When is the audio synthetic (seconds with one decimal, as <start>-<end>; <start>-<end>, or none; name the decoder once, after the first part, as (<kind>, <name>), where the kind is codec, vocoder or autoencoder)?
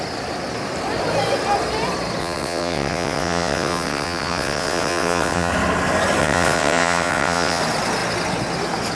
2.2-5.5 (vocoder, WaveNeXt); 6.2-7.6